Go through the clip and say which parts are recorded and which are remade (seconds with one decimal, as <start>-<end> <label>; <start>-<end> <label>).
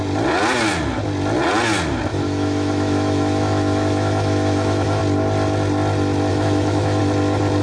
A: 0.0-2.1 recorded; 2.1-5.0 remade; 5.0-6.3 recorded; 6.3-7.0 remade; 7.0-7.6 recorded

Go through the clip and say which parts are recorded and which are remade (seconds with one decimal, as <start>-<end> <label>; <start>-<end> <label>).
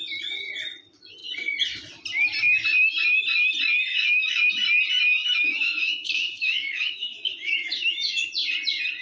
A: 0.0-3.9 recorded; 3.9-4.5 remade; 4.5-5.2 recorded; 5.2-8.3 remade; 8.3-9.0 recorded